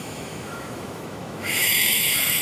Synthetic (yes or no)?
yes